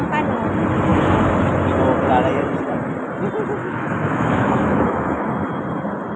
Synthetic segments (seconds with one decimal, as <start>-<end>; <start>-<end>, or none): 3.6-5.3